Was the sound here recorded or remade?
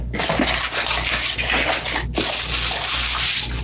recorded